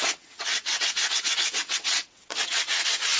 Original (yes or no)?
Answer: no